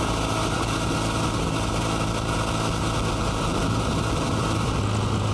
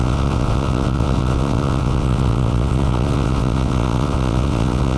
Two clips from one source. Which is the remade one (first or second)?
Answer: second